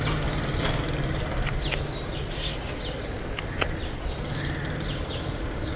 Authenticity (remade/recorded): recorded